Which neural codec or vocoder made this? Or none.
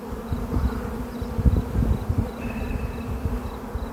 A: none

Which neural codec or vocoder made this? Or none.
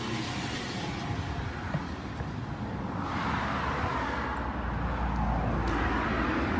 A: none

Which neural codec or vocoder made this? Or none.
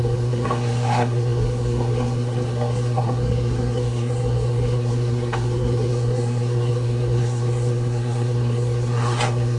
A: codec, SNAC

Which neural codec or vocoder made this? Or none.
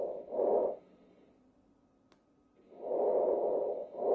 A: none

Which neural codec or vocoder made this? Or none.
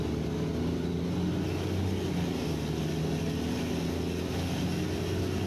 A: none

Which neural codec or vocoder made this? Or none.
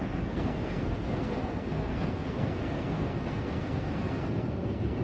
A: codec, SNAC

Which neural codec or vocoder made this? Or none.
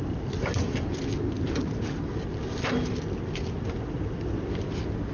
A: none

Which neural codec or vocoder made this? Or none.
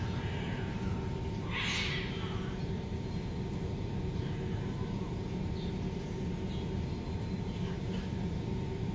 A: none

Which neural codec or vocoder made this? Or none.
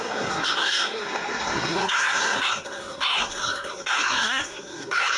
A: codec, SNAC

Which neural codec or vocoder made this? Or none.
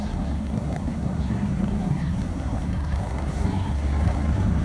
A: codec, SNAC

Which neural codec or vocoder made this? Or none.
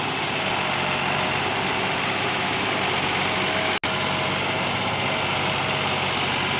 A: none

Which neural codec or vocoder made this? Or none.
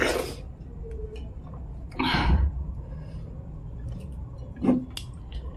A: none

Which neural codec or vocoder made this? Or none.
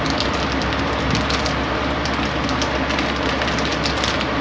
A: none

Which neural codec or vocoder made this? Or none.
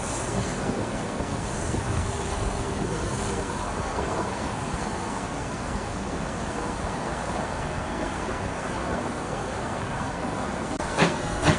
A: codec, SNAC